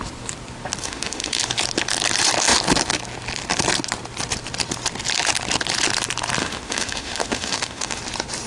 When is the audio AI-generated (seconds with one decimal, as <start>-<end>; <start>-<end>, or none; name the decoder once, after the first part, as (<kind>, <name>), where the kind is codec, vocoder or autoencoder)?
0.8-1.4 (autoencoder, DAC-VAE); 6.4-8.0